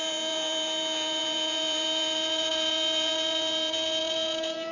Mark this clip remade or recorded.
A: remade